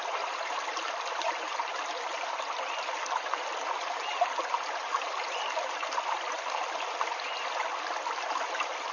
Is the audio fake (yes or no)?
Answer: no